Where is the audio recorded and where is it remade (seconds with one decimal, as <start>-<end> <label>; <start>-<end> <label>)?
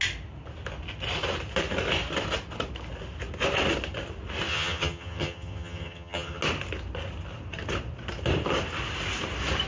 0.0-4.5 recorded; 4.5-6.4 remade; 6.4-9.7 recorded